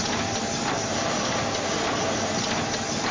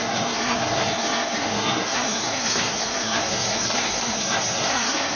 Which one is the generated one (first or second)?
second